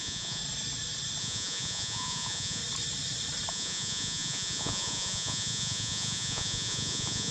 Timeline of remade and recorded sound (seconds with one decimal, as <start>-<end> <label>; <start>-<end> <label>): 0.0-0.4 remade; 0.4-1.2 recorded; 1.2-2.6 remade; 2.6-3.5 recorded; 3.5-7.3 remade